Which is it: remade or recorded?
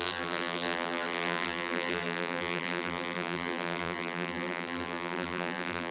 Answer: remade